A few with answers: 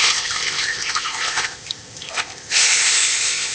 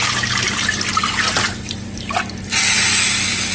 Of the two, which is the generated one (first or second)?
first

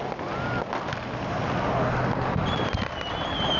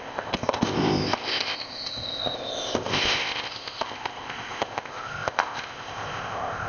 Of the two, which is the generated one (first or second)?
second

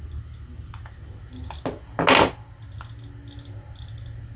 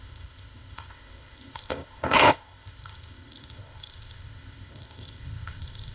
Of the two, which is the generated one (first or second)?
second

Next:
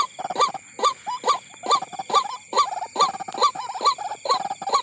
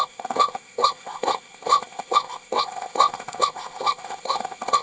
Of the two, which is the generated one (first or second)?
second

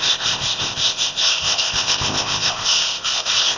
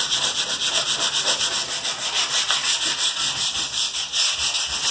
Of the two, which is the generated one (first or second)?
first